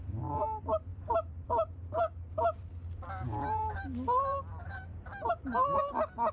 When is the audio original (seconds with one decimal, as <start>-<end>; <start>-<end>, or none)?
none